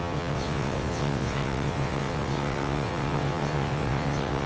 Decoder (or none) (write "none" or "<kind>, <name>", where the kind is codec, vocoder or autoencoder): vocoder, WaveNeXt